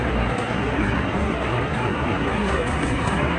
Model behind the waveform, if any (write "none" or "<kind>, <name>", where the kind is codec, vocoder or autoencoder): codec, SNAC